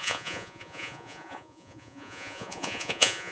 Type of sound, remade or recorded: remade